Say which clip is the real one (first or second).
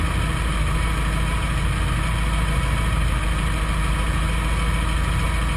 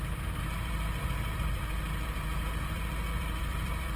first